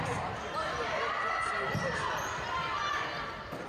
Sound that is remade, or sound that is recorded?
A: recorded